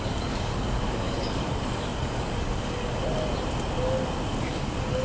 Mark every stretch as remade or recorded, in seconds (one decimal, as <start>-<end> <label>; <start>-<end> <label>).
0.0-3.0 remade; 3.0-4.3 recorded; 4.3-5.0 remade